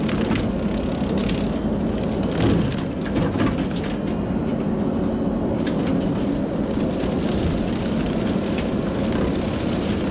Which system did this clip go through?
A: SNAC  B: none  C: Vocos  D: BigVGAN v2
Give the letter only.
B